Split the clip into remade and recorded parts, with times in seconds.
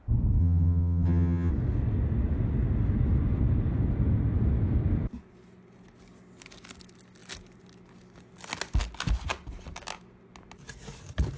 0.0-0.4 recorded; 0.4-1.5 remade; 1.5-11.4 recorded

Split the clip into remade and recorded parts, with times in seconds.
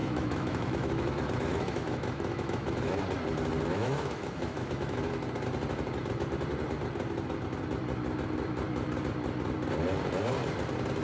0.0-3.0 remade; 3.0-3.7 recorded; 3.7-5.1 remade; 5.1-11.0 recorded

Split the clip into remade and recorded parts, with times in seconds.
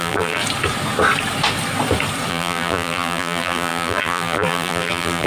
0.0-0.4 remade; 0.4-2.3 recorded; 2.3-5.3 remade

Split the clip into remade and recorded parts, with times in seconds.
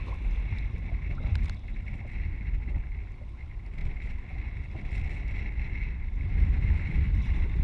0.0-3.8 remade; 3.8-5.7 recorded; 5.7-7.6 remade